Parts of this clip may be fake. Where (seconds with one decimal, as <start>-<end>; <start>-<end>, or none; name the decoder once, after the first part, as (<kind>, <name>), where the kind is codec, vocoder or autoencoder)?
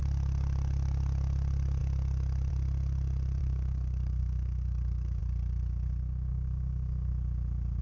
3.4-5.2 (codec, DAC); 6.3-7.1